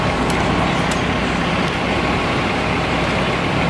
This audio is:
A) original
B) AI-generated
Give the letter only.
A